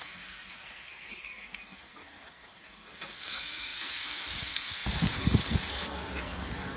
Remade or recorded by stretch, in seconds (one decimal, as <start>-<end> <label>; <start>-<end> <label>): 0.0-6.8 remade